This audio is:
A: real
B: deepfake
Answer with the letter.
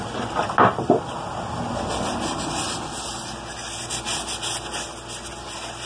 A